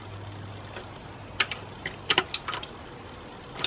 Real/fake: fake